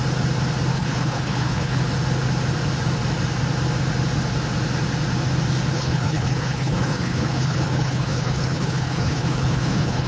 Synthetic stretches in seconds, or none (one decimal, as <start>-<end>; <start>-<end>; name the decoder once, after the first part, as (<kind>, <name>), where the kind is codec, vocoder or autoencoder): 0.7-1.8 (codec, HILCodec); 5.7-10.1